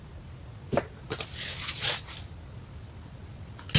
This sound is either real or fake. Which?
real